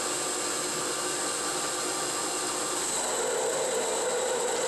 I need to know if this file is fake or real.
real